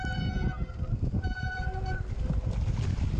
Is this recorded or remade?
recorded